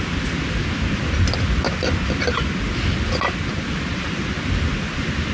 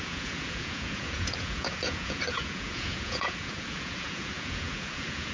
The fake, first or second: second